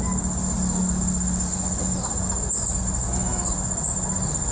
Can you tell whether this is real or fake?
real